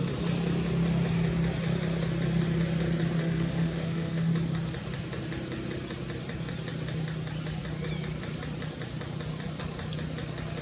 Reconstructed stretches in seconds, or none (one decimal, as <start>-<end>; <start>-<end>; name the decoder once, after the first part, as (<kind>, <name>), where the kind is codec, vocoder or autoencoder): 3.2-4.3 (autoencoder, DAC-VAE)